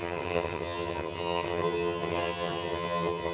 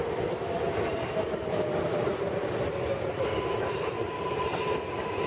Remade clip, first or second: first